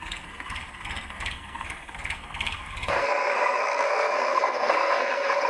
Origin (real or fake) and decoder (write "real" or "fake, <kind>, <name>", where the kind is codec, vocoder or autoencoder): fake, codec, SNAC